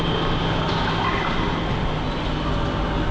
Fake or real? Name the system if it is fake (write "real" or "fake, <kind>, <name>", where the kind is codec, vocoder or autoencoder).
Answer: real